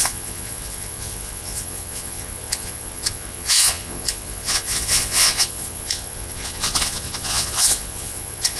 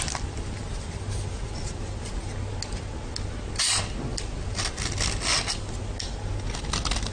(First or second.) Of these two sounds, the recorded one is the second